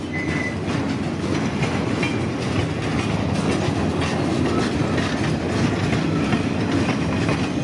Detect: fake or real real